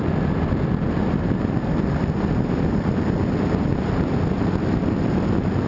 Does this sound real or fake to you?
real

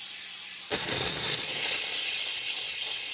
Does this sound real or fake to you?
fake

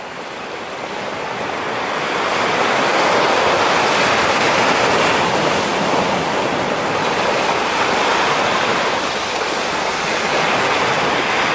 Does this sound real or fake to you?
real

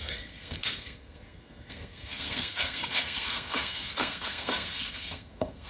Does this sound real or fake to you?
fake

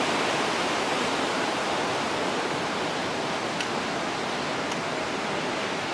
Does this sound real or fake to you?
real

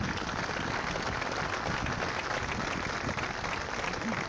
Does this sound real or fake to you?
real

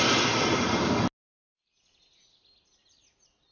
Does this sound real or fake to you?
real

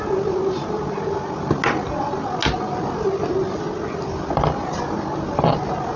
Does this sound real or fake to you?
real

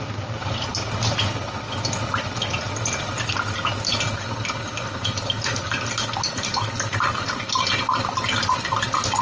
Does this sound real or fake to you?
real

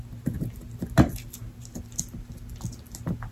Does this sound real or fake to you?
real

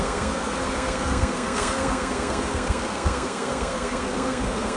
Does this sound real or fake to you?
fake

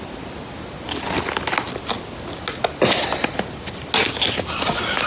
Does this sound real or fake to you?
real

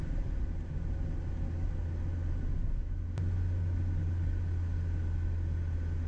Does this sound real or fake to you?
real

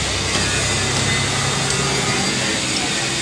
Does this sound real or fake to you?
real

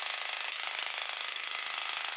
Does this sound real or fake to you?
fake